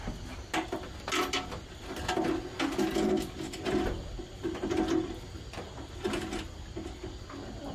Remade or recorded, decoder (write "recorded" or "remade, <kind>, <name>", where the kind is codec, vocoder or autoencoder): recorded